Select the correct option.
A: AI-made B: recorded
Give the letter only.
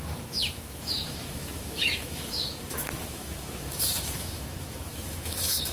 A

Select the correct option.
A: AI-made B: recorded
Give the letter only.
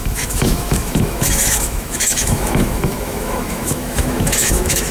A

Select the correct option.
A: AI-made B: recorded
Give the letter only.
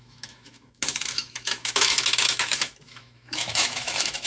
A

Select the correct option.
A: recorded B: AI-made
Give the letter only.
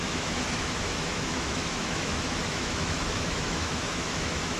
B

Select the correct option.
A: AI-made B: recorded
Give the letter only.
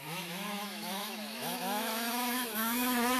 A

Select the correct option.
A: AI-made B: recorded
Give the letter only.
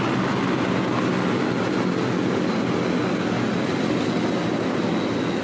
B